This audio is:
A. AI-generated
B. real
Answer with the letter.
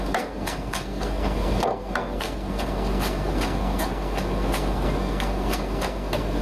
A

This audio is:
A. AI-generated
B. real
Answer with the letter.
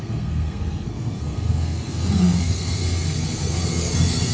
A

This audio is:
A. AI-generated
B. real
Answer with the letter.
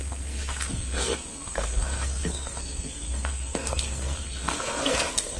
A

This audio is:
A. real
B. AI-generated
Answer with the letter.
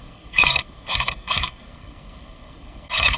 B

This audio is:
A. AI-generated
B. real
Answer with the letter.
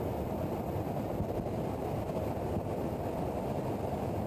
B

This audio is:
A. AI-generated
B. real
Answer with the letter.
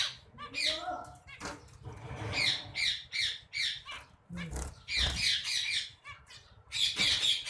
B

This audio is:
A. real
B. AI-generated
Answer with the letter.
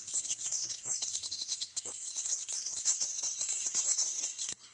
B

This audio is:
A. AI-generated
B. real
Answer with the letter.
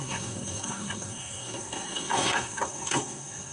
A